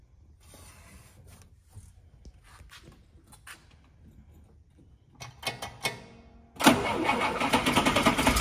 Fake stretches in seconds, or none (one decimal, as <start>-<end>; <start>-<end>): none